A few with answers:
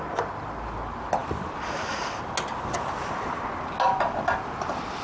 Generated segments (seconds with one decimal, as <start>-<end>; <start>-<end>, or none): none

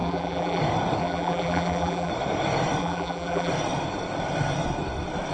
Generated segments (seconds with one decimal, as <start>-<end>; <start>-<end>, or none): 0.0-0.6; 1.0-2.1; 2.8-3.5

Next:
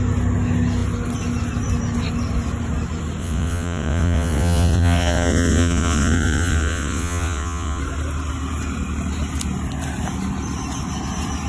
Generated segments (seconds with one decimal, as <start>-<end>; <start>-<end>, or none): 3.2-7.8

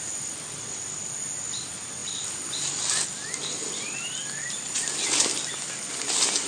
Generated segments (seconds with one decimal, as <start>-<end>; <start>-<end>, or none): none

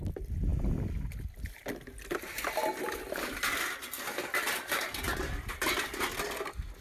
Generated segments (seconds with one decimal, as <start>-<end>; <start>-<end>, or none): none

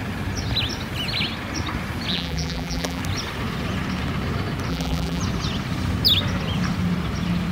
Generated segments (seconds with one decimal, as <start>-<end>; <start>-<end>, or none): 2.1-3.0; 4.7-5.2